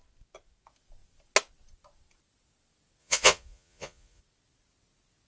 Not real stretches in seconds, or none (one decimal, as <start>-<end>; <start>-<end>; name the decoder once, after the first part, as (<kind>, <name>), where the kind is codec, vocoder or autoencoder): 3.0-4.2 (vocoder, Vocos)